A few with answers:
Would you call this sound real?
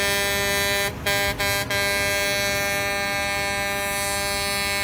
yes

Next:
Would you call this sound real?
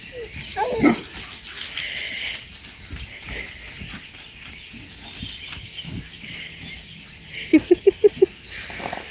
yes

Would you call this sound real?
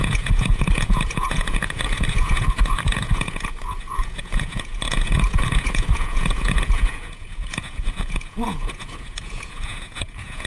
no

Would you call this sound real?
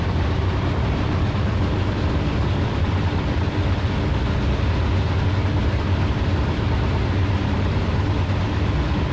no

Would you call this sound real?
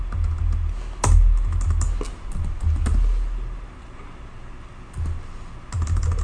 yes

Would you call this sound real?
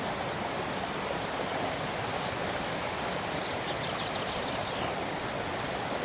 yes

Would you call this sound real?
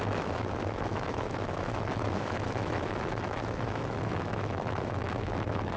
no